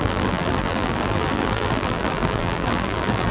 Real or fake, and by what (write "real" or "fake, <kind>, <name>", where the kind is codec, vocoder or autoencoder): fake, vocoder, BigVGAN v2